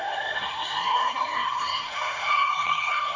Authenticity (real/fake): fake